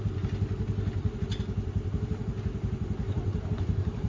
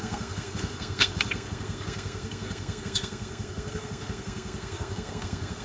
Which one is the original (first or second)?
first